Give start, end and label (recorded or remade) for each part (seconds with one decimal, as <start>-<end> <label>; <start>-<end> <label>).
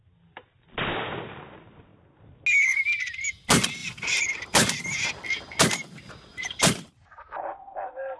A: 0.0-3.8 recorded; 3.8-5.6 remade; 5.6-6.3 recorded; 6.3-7.1 remade; 7.1-8.2 recorded